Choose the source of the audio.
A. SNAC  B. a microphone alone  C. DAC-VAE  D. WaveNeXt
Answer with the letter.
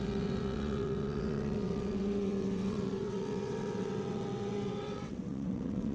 D